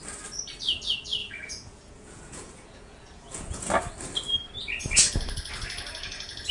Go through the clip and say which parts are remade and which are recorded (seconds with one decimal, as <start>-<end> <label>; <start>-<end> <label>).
0.0-1.2 recorded; 1.2-3.7 remade; 3.7-6.5 recorded